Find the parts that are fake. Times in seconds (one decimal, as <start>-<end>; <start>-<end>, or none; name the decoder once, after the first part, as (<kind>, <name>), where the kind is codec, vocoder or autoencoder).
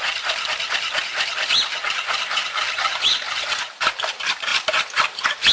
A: none